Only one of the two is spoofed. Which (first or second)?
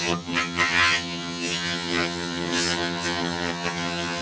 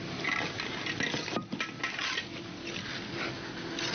first